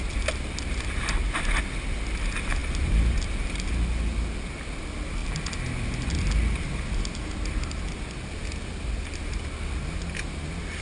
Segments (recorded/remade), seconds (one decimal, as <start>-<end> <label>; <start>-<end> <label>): 0.0-10.8 recorded